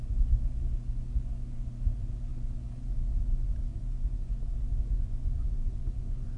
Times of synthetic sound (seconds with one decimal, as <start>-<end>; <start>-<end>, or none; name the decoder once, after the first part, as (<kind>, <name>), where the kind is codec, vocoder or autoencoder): 3.7-4.5 (vocoder, Vocos); 4.9-6.4